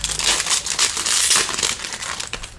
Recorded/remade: recorded